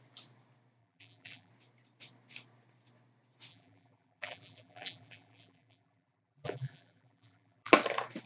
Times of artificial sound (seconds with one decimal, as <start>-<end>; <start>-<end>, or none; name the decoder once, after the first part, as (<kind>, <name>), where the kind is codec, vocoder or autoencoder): 0.8-1.5 (vocoder, BigVGAN v2); 3.5-7.7